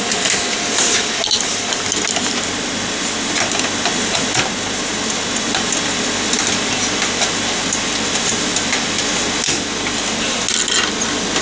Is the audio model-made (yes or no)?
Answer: no